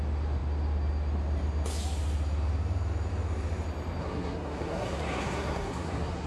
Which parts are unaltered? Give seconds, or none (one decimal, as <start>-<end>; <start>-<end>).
0.0-4.0